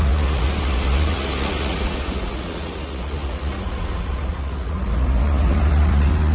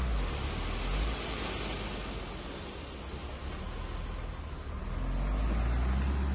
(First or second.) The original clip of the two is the second